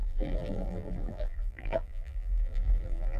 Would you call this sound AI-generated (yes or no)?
yes